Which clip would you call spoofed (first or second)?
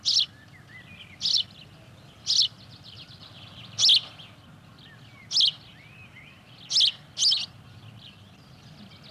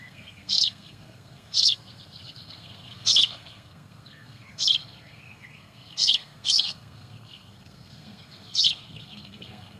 second